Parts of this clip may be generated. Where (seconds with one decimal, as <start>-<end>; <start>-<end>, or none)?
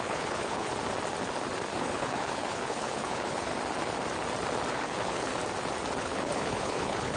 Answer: 0.0-0.7; 1.8-3.5; 4.7-5.3; 6.0-7.2